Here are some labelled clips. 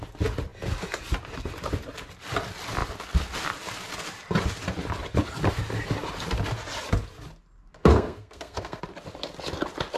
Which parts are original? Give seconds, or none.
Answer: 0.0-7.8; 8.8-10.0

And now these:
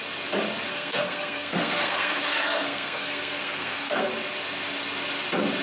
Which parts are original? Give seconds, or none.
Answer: 0.0-0.7; 4.1-5.6

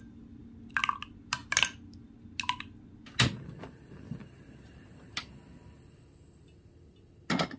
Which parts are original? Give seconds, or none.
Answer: 0.0-7.6

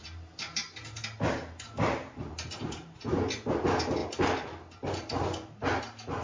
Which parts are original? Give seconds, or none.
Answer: 0.0-6.2